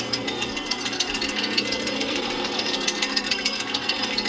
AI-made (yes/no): yes